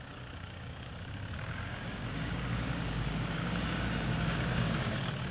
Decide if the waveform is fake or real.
fake